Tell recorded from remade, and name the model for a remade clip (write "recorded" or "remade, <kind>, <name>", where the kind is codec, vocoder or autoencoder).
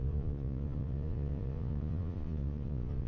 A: remade, vocoder, Vocos